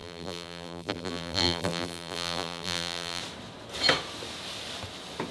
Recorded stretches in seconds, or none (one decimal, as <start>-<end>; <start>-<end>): 3.2-5.3